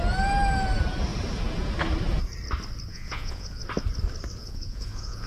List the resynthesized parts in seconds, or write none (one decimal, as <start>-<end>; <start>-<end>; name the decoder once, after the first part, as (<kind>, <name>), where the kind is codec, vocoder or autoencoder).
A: 2.9-3.6 (vocoder, Vocos); 4.4-5.3